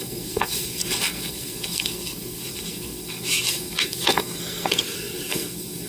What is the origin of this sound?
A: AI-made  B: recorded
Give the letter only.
A